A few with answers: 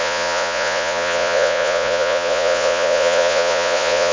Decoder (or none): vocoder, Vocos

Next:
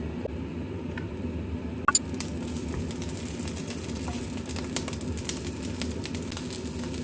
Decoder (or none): none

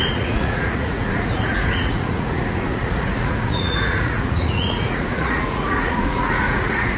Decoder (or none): vocoder, Vocos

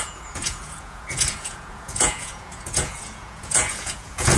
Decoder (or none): vocoder, Vocos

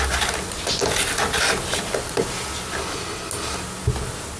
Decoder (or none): none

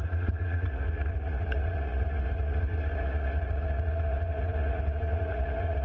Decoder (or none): vocoder, Vocos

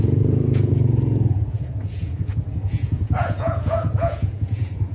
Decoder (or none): vocoder, Vocos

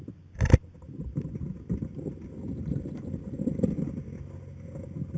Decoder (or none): none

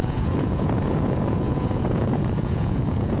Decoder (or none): vocoder, Vocos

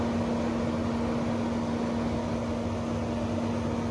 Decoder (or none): none